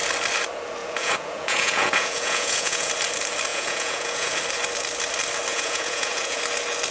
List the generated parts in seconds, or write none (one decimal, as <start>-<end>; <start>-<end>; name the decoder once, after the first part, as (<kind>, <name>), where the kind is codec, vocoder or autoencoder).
0.8-2.9 (vocoder, Vocos); 3.5-4.4; 5.5-6.4